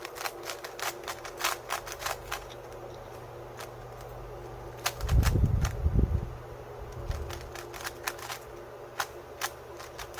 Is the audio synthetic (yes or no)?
no